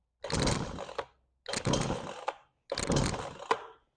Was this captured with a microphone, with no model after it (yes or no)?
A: yes